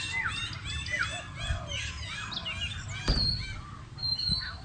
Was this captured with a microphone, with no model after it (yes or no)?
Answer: yes